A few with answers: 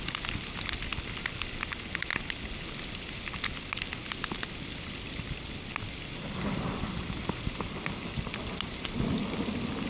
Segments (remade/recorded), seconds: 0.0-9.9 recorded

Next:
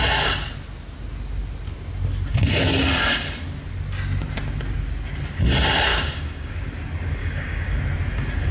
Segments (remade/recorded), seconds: 0.0-5.9 recorded; 5.9-6.5 remade; 6.5-7.2 recorded; 7.2-7.8 remade; 7.8-8.5 recorded

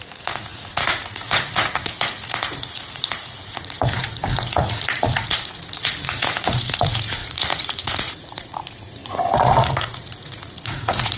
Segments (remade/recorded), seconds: 0.0-11.2 remade

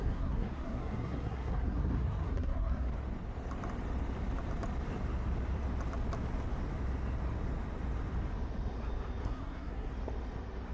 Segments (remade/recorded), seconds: 0.0-2.9 remade; 2.9-9.2 recorded; 9.2-9.9 remade; 9.9-10.7 recorded

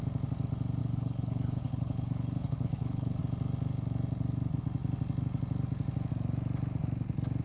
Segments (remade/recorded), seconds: 0.0-0.8 recorded; 0.8-3.2 remade; 3.2-7.4 recorded

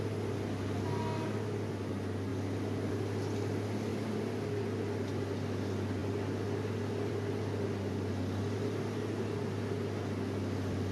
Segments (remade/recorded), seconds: 0.0-10.9 recorded

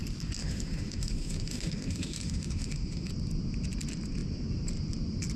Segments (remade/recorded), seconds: 0.0-0.4 recorded; 0.4-3.1 remade; 3.1-5.4 recorded

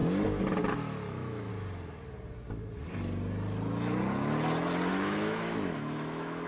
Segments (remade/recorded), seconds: 0.0-1.1 recorded; 1.1-1.5 remade; 1.5-4.9 recorded; 4.9-6.5 remade